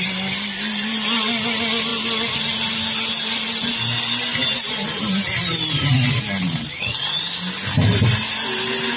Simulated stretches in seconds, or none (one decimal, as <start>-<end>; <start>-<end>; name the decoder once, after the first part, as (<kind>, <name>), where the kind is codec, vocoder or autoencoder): none